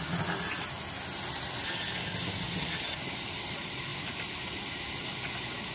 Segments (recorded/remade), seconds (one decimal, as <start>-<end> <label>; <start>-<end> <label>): 0.0-5.7 recorded